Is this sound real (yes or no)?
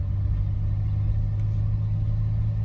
yes